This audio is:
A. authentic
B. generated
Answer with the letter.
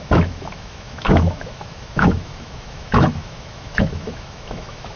B